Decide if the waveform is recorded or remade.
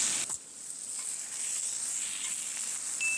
recorded